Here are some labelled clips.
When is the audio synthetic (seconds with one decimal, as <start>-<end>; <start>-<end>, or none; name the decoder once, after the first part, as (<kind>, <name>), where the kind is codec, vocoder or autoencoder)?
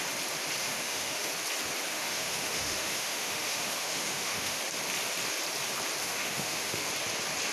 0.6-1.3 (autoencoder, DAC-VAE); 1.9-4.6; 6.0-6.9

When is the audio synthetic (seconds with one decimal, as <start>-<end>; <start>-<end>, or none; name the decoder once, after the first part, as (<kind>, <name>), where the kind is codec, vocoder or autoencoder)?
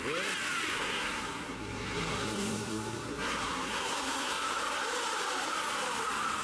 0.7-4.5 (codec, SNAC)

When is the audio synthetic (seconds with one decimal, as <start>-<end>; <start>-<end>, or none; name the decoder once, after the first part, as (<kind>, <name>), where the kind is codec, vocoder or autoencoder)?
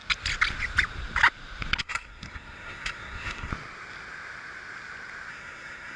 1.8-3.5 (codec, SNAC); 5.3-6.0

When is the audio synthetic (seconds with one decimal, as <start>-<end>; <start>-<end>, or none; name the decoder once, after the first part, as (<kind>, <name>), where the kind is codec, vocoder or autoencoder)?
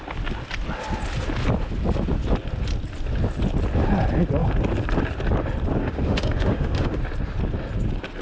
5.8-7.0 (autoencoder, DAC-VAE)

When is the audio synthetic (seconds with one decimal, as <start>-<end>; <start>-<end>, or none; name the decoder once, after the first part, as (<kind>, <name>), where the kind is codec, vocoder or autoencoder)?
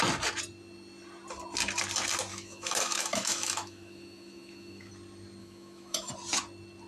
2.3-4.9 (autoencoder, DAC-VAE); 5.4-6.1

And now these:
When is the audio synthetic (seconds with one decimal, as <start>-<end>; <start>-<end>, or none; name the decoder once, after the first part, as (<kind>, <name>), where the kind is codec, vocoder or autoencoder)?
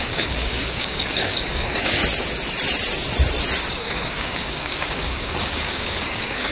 0.0-2.0 (codec, DAC); 3.7-6.5